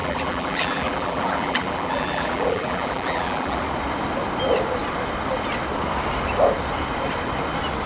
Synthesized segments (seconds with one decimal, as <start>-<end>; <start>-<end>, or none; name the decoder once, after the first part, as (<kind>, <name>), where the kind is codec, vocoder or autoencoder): 0.0-3.6 (vocoder, BigVGAN v2)